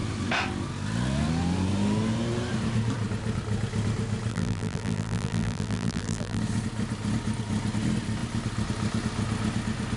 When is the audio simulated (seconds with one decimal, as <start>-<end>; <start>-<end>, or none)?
4.3-6.4